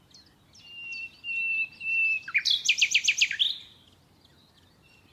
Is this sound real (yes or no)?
yes